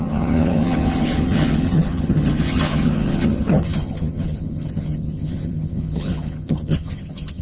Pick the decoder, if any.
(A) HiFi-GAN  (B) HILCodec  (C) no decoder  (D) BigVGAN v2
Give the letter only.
A